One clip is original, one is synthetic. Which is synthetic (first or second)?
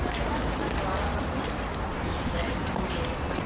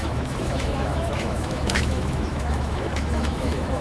second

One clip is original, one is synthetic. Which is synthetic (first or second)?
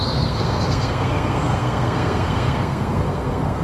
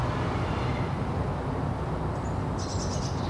first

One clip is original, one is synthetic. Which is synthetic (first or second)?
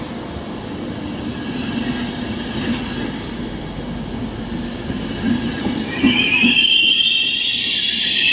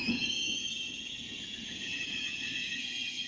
second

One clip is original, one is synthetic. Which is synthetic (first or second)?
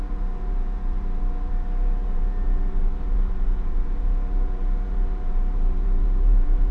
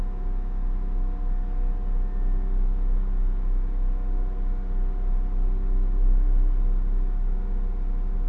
first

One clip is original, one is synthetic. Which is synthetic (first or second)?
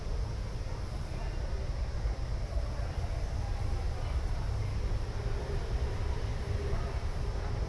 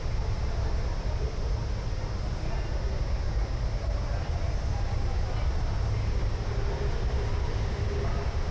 first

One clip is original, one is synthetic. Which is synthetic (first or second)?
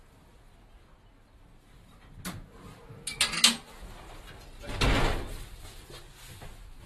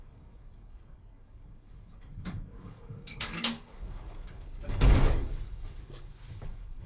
second